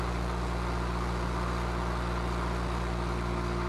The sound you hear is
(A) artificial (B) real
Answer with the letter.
B